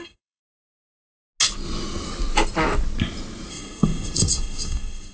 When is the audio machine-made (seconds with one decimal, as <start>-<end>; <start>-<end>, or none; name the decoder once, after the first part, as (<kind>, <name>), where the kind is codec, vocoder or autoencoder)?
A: 0.0-0.4 (codec, SNAC); 3.5-5.1